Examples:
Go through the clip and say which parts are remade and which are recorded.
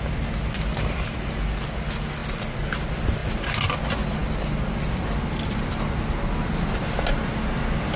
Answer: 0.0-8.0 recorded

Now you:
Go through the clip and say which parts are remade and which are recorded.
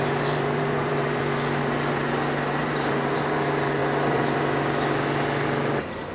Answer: 0.0-1.2 remade; 1.2-2.6 recorded; 2.6-3.8 remade; 3.8-6.1 recorded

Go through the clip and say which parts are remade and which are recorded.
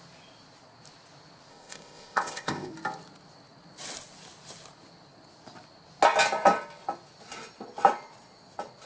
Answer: 0.0-1.5 recorded; 1.5-2.7 remade; 2.7-8.9 recorded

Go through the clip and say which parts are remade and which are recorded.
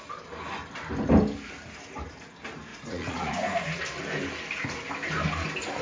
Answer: 0.0-2.7 recorded; 2.7-3.8 remade; 3.8-5.8 recorded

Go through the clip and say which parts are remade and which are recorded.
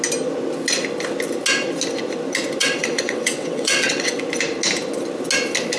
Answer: 0.0-2.6 recorded; 2.6-4.2 remade; 4.2-5.8 recorded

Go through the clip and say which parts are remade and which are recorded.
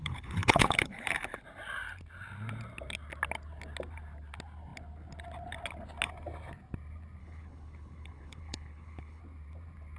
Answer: 0.0-1.4 remade; 1.4-7.2 recorded; 7.2-9.2 remade; 9.2-10.0 recorded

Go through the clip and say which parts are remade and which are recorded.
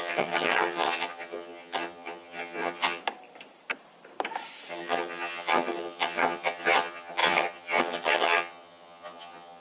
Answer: 0.0-3.0 remade; 3.0-4.7 recorded; 4.7-9.6 remade